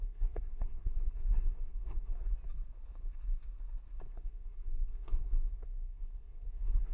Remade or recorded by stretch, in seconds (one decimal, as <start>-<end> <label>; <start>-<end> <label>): 0.0-2.3 remade; 2.3-4.1 recorded; 4.1-6.9 remade